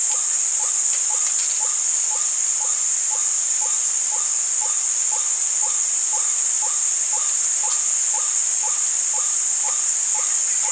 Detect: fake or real real